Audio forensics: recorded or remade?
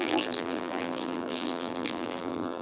remade